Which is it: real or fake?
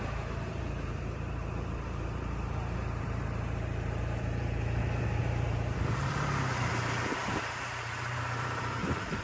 fake